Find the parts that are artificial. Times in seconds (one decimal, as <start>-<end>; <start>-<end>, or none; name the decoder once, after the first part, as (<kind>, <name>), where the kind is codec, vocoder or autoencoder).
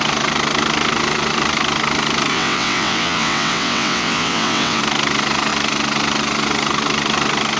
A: 2.3-4.8 (vocoder, WaveNeXt)